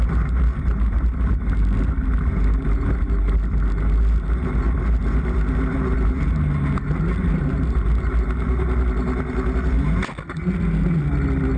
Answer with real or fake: real